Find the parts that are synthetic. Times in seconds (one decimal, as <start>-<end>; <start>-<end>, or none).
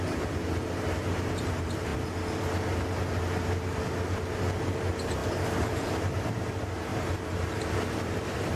0.0-1.9; 4.3-8.6